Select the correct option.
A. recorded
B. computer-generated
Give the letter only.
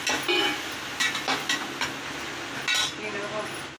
A